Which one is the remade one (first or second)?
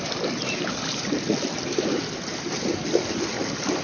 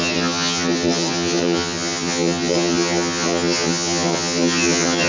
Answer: second